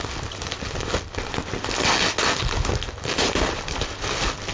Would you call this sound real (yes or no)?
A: yes